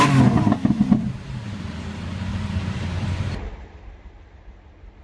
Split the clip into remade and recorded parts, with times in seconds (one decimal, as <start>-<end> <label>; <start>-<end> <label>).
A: 0.0-2.3 recorded; 2.3-4.2 remade; 4.2-5.0 recorded